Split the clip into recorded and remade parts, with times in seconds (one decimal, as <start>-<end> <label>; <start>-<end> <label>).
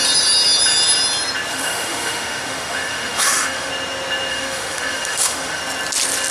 0.0-1.5 recorded; 1.5-3.7 remade; 3.7-4.3 recorded; 4.3-5.6 remade; 5.6-6.3 recorded